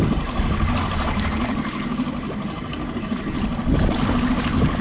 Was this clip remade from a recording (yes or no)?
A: no